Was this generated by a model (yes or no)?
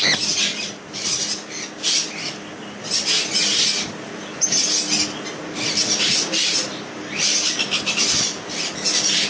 no